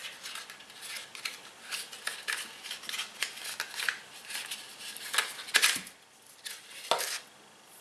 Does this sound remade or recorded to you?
recorded